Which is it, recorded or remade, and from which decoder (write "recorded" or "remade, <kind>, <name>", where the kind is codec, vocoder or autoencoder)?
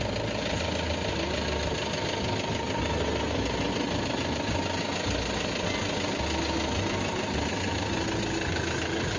recorded